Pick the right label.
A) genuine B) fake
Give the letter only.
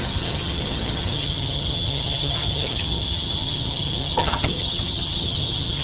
B